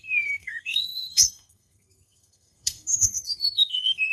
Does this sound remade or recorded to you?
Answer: remade